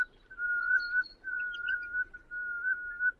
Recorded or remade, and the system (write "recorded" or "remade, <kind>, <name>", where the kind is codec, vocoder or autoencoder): recorded